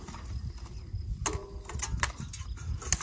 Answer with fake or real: real